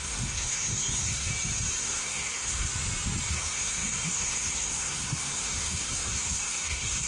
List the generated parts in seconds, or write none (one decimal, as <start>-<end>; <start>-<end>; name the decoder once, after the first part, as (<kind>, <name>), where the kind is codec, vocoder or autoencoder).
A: 0.0-1.3 (codec, SNAC); 1.8-2.7; 3.3-7.1